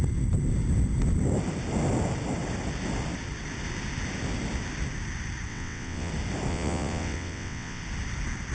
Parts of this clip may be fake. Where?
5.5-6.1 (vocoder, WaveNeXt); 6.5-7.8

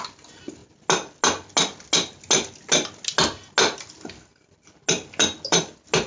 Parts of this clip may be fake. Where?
none

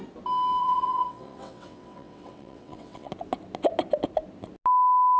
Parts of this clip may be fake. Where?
0.6-3.1 (vocoder, WaveNeXt)